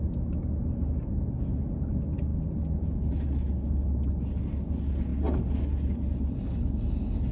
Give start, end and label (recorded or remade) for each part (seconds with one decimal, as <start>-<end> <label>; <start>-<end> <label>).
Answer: 0.0-7.3 recorded